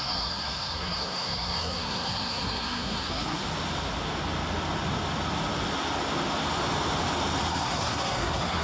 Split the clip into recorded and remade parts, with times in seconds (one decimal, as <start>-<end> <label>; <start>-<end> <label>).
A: 0.0-3.4 remade; 3.4-7.5 recorded; 7.5-8.6 remade